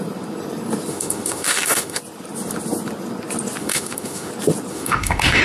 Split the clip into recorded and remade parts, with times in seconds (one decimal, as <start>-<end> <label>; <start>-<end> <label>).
0.0-0.9 recorded; 0.9-2.0 remade; 2.0-3.6 recorded; 3.6-4.3 remade; 4.3-4.7 recorded; 4.7-5.4 remade